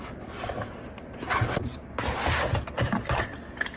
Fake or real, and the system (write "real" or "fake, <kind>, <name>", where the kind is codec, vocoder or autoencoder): real